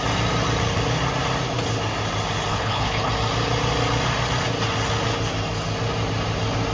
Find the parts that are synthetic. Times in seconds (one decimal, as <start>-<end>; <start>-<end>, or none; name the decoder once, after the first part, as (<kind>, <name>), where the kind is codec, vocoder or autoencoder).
2.5-3.1 (codec, HILCodec)